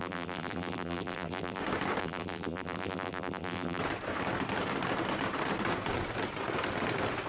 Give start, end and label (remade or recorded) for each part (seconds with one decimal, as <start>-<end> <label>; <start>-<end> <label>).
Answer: 0.0-1.6 remade; 1.6-2.0 recorded; 2.0-3.8 remade; 3.8-7.3 recorded